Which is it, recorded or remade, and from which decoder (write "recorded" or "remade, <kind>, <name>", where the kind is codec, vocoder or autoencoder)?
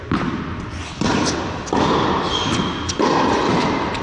recorded